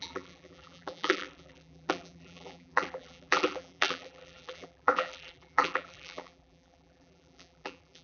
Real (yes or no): no